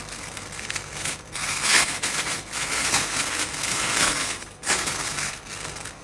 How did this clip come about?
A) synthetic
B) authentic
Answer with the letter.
A